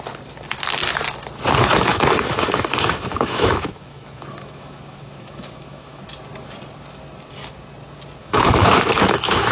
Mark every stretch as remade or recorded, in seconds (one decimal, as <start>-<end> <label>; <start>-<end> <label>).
0.0-1.9 recorded; 1.9-6.0 remade; 6.0-8.2 recorded; 8.2-9.5 remade